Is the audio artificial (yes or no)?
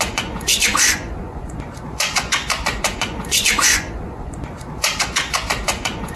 yes